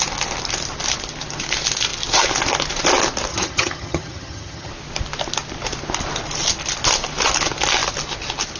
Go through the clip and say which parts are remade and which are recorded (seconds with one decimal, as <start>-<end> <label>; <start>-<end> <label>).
0.0-3.3 recorded; 3.3-4.7 remade; 4.7-8.6 recorded